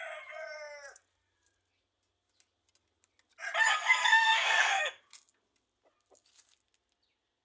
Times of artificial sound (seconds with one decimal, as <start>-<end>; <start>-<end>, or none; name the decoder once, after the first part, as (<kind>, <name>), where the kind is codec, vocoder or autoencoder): 3.7-5.0 (codec, SNAC)